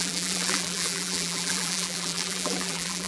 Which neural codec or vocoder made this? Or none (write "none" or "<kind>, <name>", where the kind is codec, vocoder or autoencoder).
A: vocoder, BigVGAN v2